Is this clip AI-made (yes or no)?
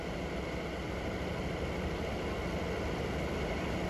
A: no